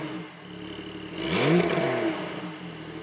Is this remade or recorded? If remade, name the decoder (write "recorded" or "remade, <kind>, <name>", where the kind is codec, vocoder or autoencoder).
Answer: recorded